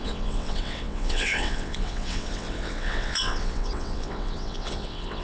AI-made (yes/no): yes